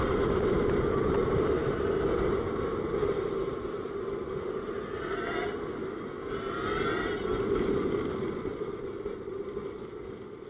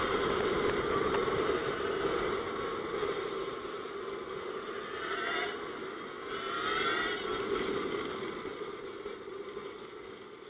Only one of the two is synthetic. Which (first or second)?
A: first